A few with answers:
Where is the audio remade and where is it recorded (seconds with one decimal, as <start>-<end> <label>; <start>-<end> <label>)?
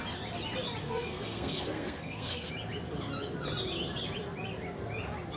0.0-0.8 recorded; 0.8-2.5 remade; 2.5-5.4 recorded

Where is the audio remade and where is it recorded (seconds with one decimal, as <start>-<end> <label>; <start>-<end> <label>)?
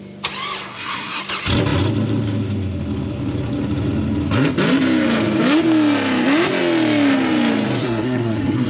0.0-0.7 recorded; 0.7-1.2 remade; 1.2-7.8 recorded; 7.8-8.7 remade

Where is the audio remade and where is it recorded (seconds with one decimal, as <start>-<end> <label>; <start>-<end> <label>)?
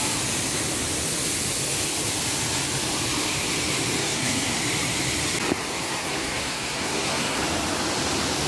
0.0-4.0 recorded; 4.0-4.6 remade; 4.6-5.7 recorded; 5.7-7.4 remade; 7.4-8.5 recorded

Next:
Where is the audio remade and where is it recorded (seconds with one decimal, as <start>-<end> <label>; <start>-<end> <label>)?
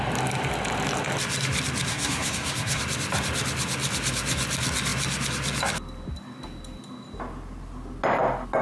0.0-1.9 recorded; 1.9-2.8 remade; 2.8-8.6 recorded